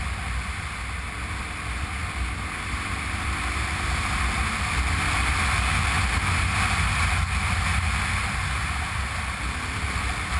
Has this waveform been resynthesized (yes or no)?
no